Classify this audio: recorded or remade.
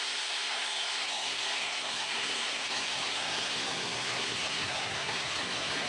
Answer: remade